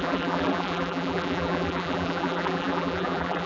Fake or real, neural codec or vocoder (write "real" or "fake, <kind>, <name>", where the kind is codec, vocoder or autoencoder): fake, vocoder, BigVGAN v2